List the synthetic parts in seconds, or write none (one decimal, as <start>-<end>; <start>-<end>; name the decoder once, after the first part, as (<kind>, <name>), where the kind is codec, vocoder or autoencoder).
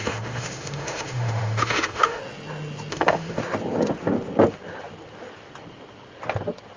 0.0-2.2 (autoencoder, DAC-VAE); 2.9-3.4